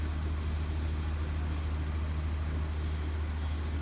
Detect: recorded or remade recorded